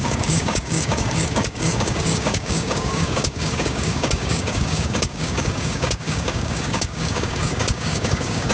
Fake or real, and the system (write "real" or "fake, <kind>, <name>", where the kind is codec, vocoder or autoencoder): fake, codec, DAC